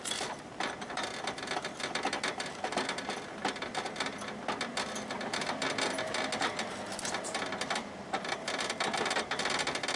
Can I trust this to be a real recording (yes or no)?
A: yes